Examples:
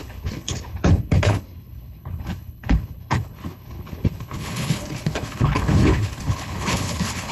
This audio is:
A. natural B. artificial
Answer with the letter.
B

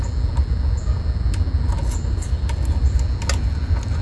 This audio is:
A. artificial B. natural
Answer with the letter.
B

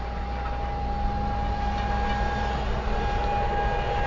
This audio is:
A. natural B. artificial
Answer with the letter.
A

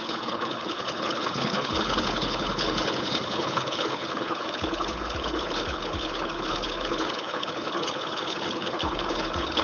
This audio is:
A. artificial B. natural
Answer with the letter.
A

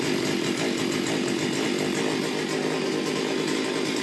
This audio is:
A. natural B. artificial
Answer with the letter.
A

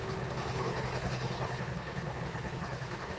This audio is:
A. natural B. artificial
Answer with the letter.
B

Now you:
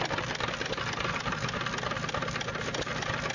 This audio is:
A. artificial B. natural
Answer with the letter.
B